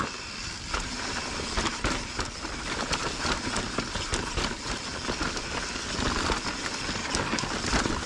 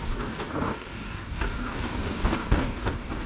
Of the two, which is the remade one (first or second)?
second